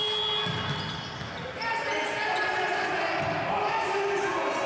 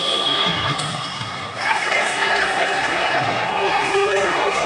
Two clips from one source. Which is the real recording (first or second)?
first